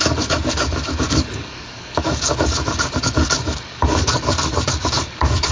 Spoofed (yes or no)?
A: yes